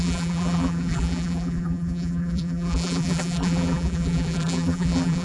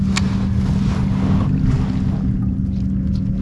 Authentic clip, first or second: second